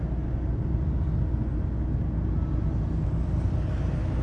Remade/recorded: recorded